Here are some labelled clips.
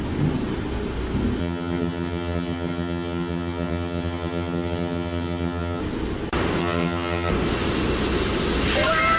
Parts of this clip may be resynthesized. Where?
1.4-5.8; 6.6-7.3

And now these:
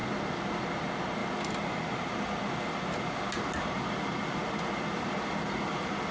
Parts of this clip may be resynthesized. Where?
none

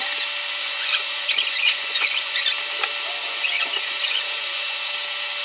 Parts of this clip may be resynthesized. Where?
0.6-2.5; 3.2-4.9

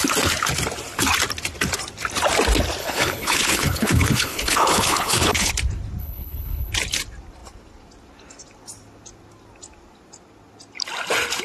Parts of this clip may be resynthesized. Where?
2.8-5.5; 6.0-6.7

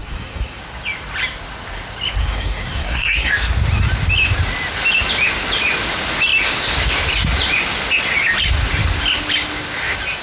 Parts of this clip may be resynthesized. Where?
0.0-0.6; 2.2-3.3

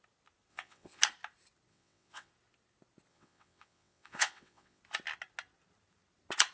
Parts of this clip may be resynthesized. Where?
0.5-1.0; 1.7-2.3; 3.1-4.8

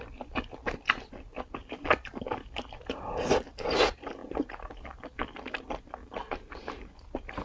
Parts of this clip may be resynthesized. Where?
4.2-4.7; 6.0-6.9

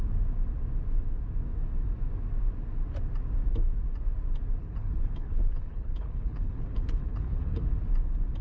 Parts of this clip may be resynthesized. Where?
4.6-7.6